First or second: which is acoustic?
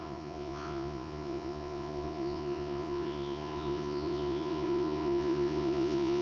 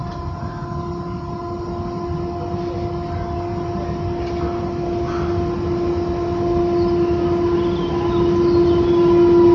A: second